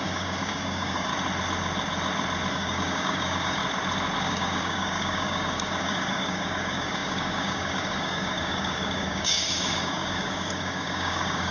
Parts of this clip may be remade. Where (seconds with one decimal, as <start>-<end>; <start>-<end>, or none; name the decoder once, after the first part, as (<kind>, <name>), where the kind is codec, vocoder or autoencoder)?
0.0-1.1 (codec, DAC); 2.5-3.6; 4.2-11.5